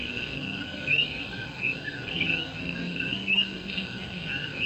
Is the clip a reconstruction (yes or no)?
yes